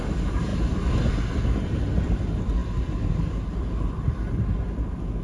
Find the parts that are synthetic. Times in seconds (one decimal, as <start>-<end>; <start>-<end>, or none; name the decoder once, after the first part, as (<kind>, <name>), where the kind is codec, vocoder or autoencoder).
none